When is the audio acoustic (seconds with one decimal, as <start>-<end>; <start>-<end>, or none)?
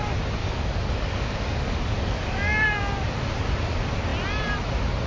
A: 0.0-0.4; 2.8-5.1